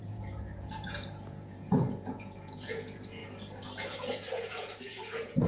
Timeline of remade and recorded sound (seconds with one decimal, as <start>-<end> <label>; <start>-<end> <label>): 0.0-3.2 remade; 3.2-4.1 recorded; 4.1-5.5 remade